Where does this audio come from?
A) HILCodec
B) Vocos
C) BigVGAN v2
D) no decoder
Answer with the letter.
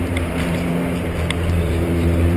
C